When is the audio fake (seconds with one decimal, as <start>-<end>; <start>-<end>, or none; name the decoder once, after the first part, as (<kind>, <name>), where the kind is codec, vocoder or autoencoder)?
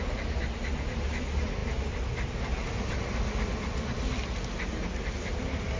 none